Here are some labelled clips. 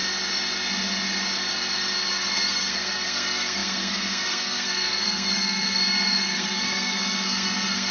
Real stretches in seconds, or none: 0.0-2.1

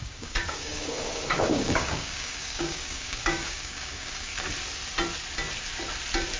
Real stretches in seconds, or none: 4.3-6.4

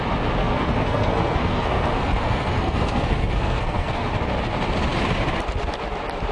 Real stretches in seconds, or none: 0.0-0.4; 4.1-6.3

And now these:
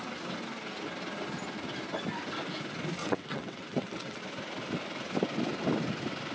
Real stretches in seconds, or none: 0.0-3.0; 4.2-6.3

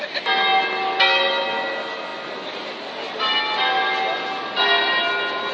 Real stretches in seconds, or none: 0.0-5.5

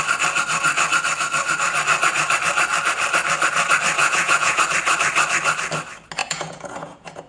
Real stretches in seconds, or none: 0.0-4.0; 4.6-6.2